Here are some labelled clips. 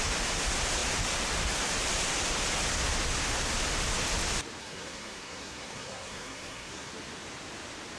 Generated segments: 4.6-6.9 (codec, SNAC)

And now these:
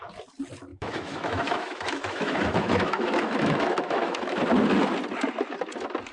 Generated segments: 0.7-4.4 (autoencoder, DAC-VAE)

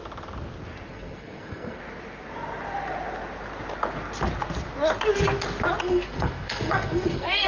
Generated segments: 0.9-1.8 (codec, SNAC); 5.8-7.5

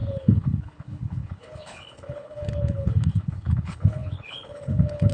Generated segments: 0.0-5.1 (codec, HILCodec)

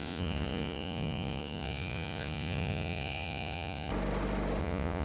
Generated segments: 0.0-3.9 (vocoder, Vocos); 4.6-5.0

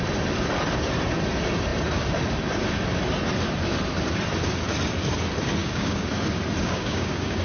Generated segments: 5.6-6.1 (codec, DAC); 6.6-7.4

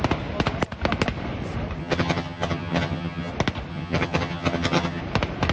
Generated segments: 1.8-3.3 (vocoder, HiFi-GAN); 3.7-5.0

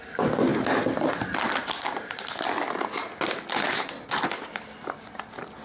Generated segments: none